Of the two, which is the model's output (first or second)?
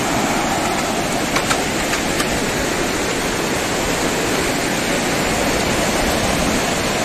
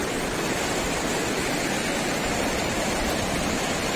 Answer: second